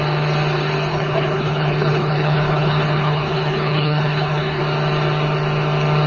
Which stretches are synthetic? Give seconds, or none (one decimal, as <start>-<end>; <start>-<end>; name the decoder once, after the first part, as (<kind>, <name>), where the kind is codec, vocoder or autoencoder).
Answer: 0.9-4.6 (codec, HILCodec)